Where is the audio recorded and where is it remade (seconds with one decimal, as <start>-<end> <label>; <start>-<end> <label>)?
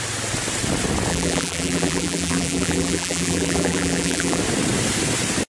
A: 0.0-1.1 recorded; 1.1-4.4 remade; 4.4-5.5 recorded